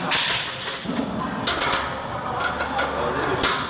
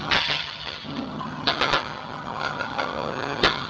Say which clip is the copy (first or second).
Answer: second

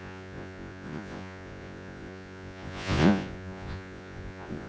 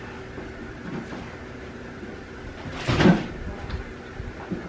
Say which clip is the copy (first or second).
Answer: first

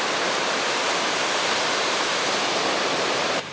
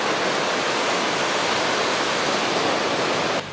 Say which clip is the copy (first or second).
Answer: first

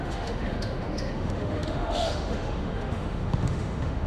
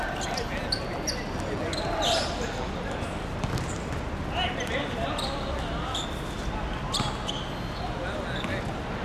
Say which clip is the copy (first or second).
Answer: first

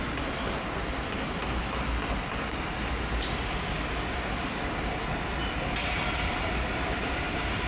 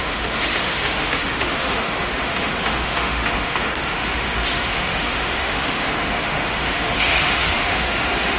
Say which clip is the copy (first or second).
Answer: second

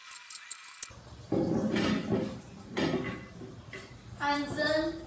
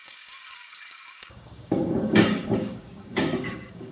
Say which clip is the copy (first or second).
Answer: second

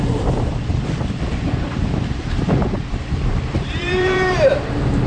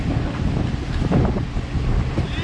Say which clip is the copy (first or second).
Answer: first